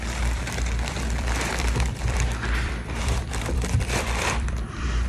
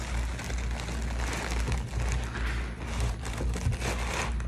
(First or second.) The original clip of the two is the second